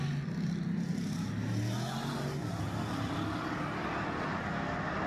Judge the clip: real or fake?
real